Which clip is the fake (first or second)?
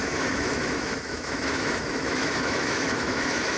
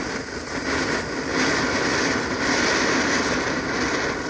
first